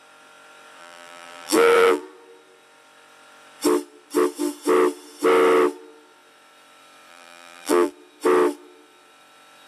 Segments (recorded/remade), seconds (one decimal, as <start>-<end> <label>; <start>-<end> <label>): 0.0-0.8 recorded; 0.8-2.0 remade; 2.0-7.1 recorded; 7.1-7.9 remade; 7.9-9.7 recorded